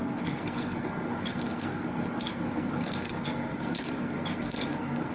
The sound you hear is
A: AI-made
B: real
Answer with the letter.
A